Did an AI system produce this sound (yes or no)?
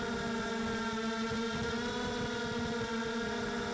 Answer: no